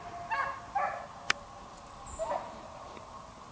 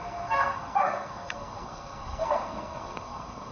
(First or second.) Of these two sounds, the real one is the first